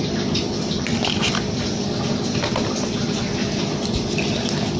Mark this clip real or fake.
real